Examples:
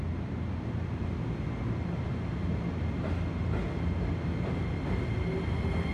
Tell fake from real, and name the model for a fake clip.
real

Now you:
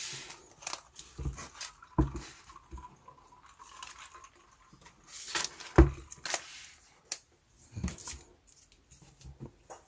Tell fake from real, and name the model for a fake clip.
real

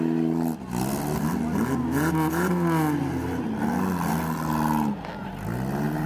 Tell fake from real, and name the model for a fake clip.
real